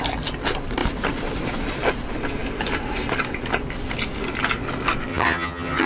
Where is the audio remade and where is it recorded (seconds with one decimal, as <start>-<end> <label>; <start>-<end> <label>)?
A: 0.0-5.1 recorded; 5.1-5.9 remade